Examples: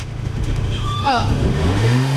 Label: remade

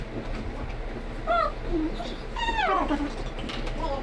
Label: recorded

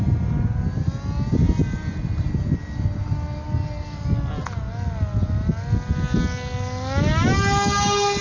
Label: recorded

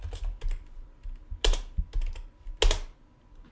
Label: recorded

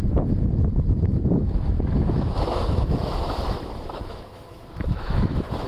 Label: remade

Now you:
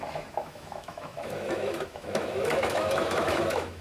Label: remade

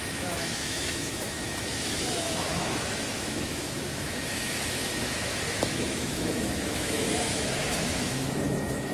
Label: remade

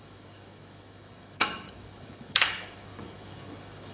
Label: remade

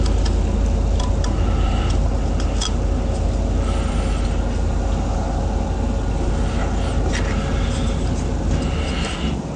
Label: recorded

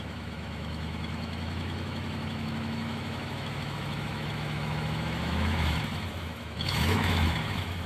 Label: remade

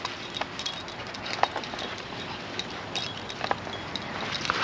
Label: recorded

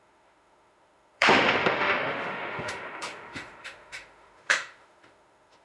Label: remade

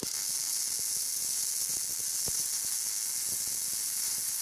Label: recorded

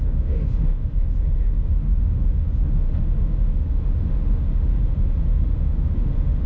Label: remade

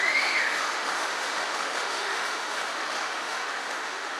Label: remade